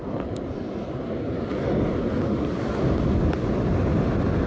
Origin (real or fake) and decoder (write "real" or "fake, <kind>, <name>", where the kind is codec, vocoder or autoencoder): real